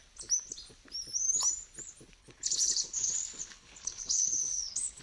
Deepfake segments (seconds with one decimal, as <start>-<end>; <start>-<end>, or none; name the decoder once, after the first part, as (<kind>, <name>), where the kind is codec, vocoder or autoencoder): 2.2-5.0 (codec, HILCodec)